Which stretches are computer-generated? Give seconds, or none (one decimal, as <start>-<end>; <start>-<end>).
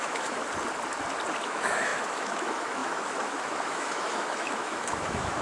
0.0-0.4; 1.4-5.4